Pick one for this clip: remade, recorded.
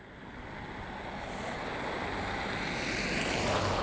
recorded